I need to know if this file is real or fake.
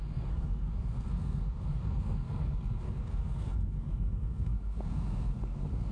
fake